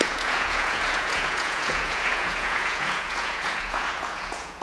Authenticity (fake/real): fake